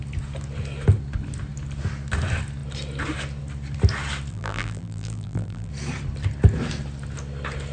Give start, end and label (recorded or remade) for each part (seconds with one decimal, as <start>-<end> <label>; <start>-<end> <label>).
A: 0.0-4.3 recorded; 4.3-5.7 remade; 5.7-7.7 recorded

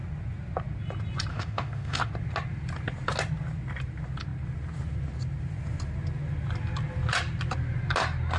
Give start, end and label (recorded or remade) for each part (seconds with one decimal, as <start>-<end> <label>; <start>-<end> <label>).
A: 0.0-1.3 recorded; 1.3-2.1 remade; 2.1-8.4 recorded